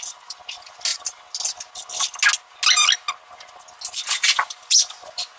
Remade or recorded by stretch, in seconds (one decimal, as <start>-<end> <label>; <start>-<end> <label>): 0.0-5.4 recorded